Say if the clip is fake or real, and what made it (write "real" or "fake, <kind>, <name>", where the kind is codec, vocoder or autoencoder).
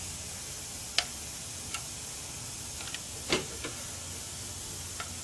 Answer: real